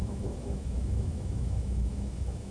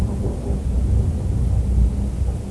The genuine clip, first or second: second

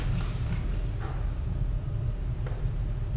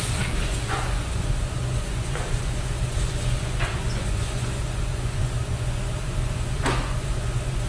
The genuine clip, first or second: first